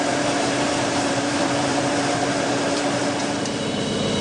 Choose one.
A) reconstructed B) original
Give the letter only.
A